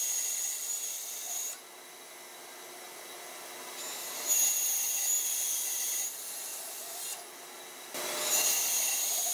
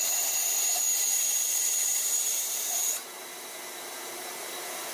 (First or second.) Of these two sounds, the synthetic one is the second